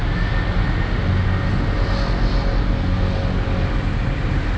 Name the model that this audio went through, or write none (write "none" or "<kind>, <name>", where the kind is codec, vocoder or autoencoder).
none